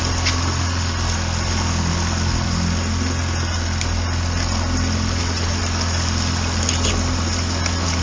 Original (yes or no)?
yes